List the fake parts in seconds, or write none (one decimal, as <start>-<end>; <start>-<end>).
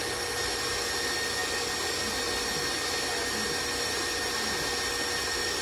none